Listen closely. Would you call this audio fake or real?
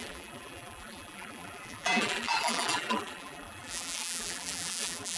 fake